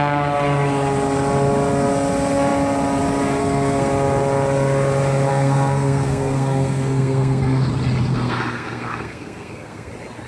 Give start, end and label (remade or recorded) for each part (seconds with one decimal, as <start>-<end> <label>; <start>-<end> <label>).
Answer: 0.0-3.4 recorded; 3.4-3.9 remade; 3.9-5.3 recorded; 5.3-7.7 remade; 7.7-8.1 recorded; 8.1-9.9 remade; 9.9-10.3 recorded